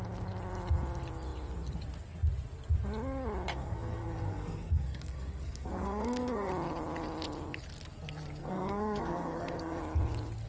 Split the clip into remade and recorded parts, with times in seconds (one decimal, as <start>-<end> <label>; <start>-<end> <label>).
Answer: 0.0-3.5 recorded; 3.5-6.5 remade; 6.5-8.4 recorded; 8.4-9.8 remade; 9.8-10.5 recorded